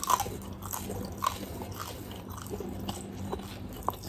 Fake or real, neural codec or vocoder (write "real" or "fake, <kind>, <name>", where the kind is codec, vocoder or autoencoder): real